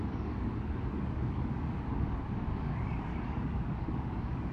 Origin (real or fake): fake